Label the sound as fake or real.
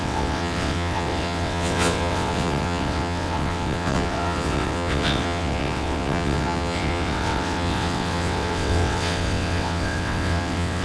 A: fake